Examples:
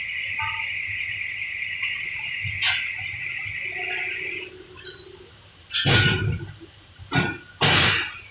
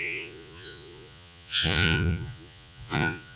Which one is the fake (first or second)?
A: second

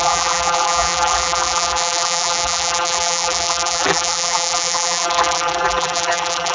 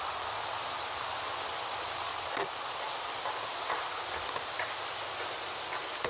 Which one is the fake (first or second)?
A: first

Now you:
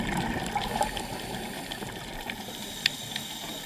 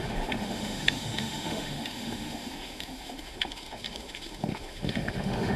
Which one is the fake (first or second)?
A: second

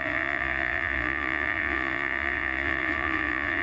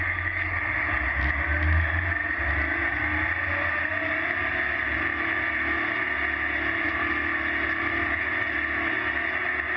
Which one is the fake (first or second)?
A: first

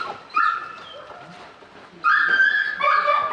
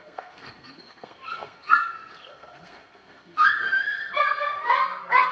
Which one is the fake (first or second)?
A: second